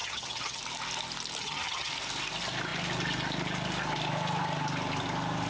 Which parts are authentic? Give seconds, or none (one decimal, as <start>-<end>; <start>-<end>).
0.6-1.4; 1.9-5.5